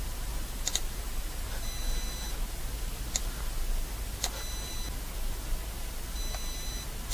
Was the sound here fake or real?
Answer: real